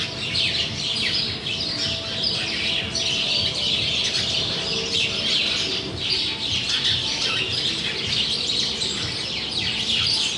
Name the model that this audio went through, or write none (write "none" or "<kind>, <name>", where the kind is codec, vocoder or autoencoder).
none